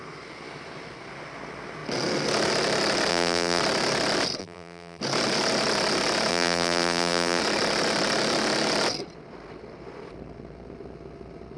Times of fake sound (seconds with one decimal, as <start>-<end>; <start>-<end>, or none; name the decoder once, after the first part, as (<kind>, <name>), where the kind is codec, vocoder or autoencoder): 3.1-3.6 (vocoder, BigVGAN v2); 4.4-5.0; 6.3-7.4